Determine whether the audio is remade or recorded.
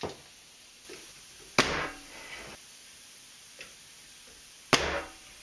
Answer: recorded